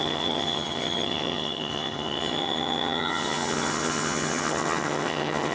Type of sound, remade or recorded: remade